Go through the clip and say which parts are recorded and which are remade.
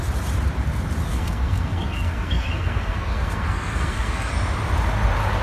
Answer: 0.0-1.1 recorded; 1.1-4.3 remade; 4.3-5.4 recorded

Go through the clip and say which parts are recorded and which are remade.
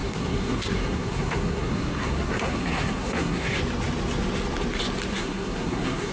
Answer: 0.0-3.6 remade; 3.6-5.1 recorded; 5.1-6.1 remade